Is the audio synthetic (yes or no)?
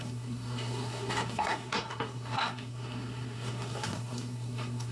yes